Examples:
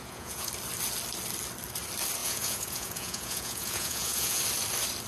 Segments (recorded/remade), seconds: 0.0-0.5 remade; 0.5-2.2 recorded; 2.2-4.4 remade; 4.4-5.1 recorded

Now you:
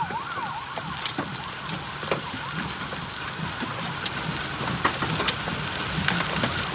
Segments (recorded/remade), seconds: 0.0-6.7 recorded

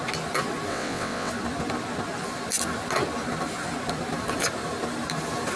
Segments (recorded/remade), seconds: 0.0-0.7 recorded; 0.7-1.3 remade; 1.3-5.6 recorded